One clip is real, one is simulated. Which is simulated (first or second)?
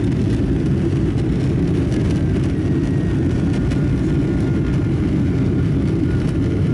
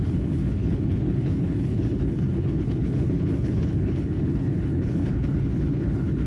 second